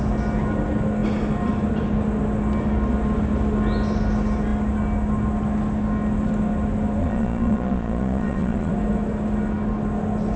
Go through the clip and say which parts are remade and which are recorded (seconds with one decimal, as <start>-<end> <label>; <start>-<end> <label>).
0.0-7.0 recorded; 7.0-8.7 remade; 8.7-10.4 recorded

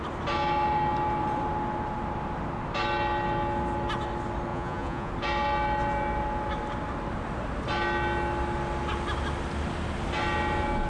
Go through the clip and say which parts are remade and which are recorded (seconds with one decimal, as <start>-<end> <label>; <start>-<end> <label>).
0.0-4.5 recorded; 4.5-5.1 remade; 5.1-10.9 recorded